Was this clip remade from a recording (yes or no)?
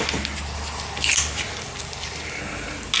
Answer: no